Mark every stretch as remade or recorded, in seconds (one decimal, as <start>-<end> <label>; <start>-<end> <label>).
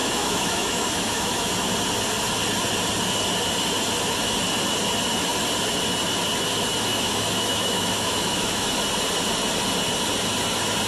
0.0-1.5 remade; 1.5-6.9 recorded; 6.9-8.6 remade; 8.6-10.9 recorded